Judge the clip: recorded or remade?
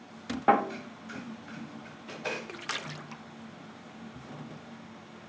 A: recorded